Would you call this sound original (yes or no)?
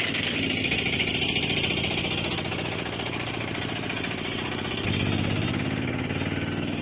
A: yes